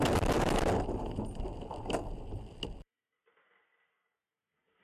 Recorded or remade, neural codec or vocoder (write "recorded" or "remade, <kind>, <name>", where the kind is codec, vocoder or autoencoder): recorded